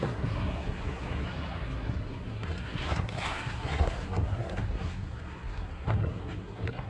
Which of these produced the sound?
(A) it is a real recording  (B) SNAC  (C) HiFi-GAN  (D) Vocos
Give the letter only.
B